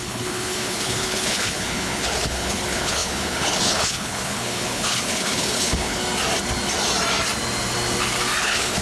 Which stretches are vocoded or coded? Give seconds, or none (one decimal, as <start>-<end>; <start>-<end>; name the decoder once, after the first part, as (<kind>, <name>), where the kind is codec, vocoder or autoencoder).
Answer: 0.0-6.0 (codec, HILCodec); 8.4-8.8